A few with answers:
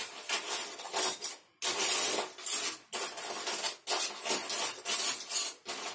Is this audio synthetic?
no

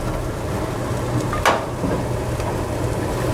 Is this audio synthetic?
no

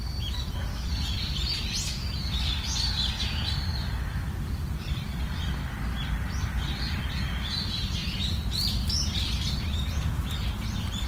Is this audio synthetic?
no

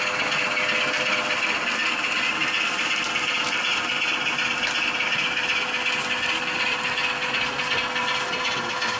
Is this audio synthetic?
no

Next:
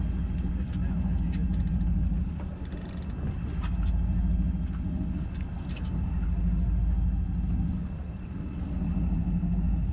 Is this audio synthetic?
no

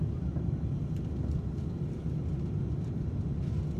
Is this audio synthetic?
no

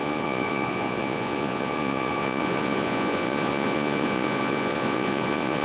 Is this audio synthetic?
yes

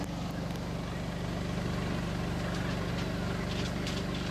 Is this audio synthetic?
no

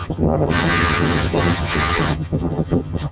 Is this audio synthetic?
yes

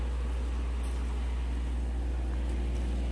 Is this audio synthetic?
no